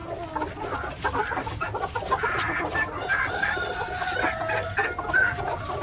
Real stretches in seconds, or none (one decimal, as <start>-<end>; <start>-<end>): 0.0-5.8